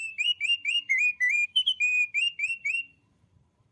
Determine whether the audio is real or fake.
fake